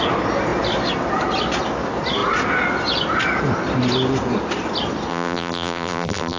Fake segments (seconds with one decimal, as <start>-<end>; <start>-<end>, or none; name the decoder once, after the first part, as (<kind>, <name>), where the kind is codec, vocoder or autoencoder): 5.1-6.4 (vocoder, BigVGAN v2)